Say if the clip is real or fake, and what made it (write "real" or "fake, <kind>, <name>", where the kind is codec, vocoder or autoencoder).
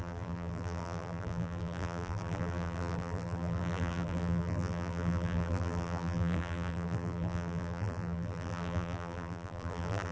fake, vocoder, BigVGAN v2